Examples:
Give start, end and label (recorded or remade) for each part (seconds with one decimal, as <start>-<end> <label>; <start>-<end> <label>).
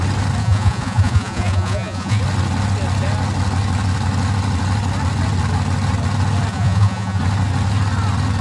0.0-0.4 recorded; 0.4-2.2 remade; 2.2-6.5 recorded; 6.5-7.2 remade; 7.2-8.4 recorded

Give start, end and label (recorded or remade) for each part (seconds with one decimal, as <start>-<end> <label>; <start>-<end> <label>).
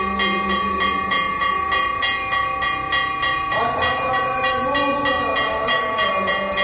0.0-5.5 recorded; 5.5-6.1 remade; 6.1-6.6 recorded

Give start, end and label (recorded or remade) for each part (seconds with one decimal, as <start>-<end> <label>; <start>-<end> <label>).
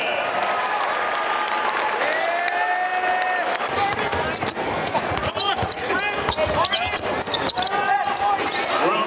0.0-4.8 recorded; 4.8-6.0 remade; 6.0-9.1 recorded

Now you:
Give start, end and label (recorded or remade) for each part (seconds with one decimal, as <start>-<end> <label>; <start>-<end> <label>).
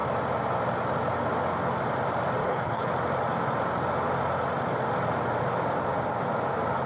0.0-2.4 recorded; 2.4-2.9 remade; 2.9-6.9 recorded